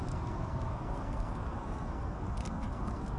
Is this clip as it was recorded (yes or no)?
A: no